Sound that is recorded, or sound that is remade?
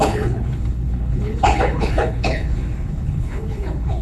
remade